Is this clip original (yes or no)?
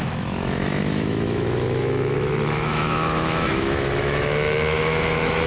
no